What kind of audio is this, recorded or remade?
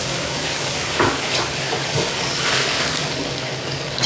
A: remade